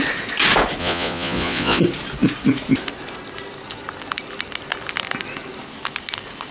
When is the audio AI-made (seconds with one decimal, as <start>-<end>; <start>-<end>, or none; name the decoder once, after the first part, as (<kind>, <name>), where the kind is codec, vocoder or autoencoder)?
0.8-1.8 (vocoder, Vocos)